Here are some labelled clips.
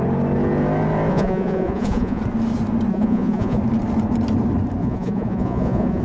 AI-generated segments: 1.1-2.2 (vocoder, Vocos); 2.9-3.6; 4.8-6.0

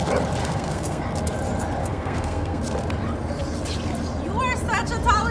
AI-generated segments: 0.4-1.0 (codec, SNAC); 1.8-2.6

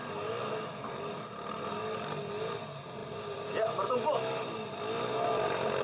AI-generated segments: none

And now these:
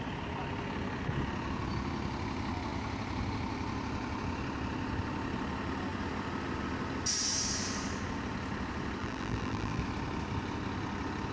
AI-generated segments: 9.0-9.8 (vocoder, BigVGAN v2)

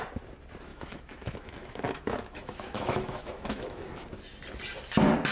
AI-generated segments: 0.7-3.9 (autoencoder, DAC-VAE)

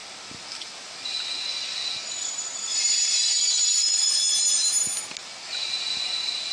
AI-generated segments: none

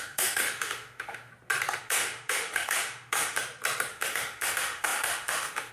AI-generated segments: 0.0-1.3 (autoencoder, DAC-VAE); 1.8-3.4; 3.9-5.7

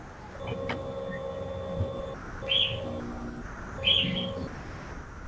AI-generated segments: none